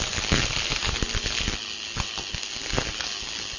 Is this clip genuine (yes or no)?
yes